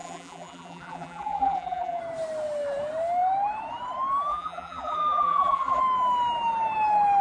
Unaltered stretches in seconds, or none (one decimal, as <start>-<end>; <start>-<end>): 2.0-4.3; 5.8-7.2